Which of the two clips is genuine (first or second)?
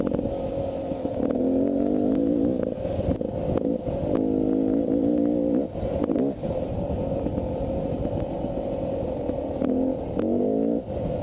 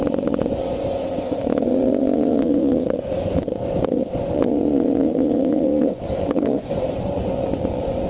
first